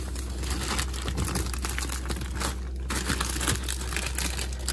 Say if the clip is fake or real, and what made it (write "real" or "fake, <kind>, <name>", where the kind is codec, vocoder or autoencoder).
real